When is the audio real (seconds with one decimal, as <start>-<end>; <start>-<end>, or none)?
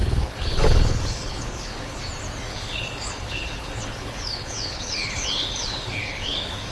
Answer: 2.0-2.5